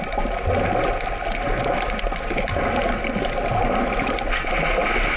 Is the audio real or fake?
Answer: real